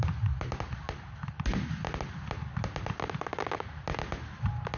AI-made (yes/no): no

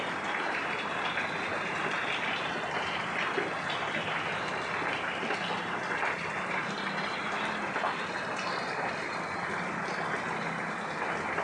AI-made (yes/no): no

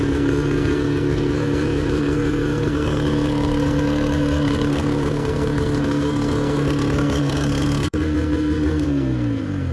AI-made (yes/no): yes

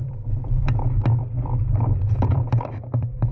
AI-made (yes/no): yes